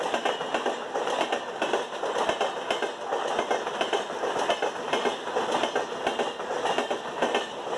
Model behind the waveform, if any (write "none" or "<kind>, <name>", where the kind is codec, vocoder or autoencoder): none